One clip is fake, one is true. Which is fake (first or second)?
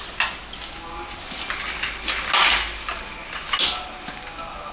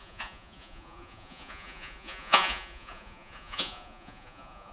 second